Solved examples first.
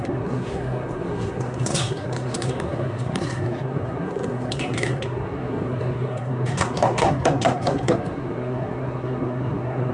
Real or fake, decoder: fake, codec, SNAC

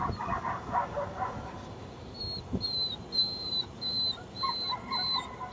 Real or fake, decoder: real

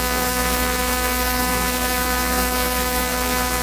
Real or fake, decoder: fake, codec, SNAC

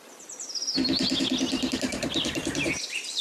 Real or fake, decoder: real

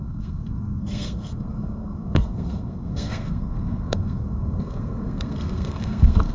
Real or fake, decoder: fake, codec, SNAC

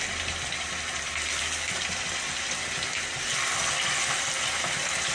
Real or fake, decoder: real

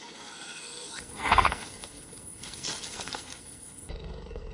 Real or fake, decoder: fake, codec, SNAC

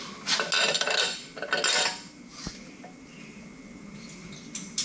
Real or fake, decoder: real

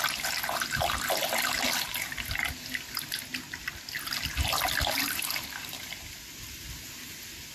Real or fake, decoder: real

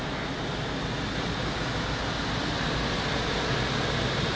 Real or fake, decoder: real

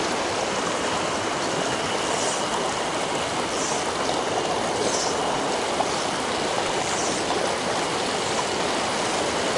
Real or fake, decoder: real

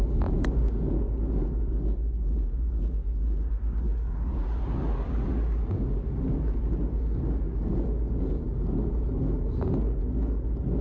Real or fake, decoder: real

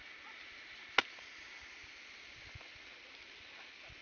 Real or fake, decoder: real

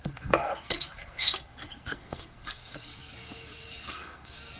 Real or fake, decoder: fake, codec, SNAC